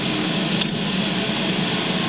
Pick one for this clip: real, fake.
real